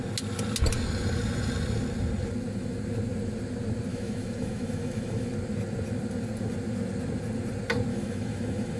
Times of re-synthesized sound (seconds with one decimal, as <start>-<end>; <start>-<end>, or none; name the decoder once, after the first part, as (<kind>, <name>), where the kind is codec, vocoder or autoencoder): 3.9-5.3 (autoencoder, DAC-VAE); 7.9-8.8